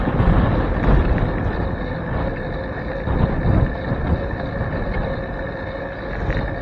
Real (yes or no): yes